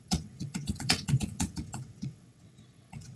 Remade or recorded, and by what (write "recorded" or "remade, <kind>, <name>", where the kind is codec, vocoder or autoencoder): remade, vocoder, WaveNeXt